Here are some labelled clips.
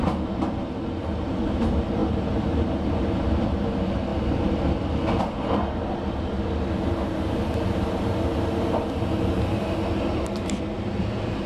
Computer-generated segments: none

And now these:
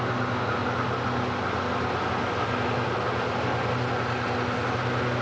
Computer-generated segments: none

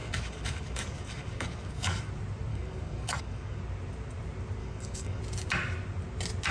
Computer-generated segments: 0.0-2.1 (codec, DAC); 2.5-3.6; 4.6-5.2

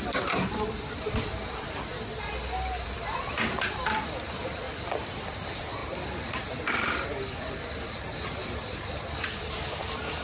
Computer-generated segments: 0.0-10.2 (vocoder, BigVGAN v2)

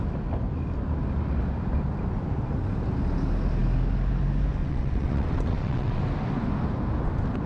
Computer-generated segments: 4.6-6.0 (vocoder, WaveNeXt)